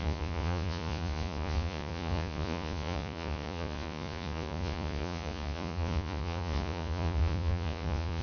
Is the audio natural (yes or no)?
no